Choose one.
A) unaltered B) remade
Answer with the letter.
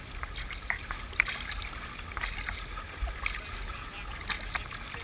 A